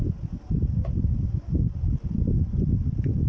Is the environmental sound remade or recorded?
recorded